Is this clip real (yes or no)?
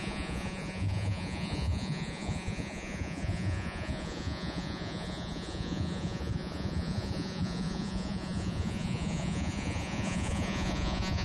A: no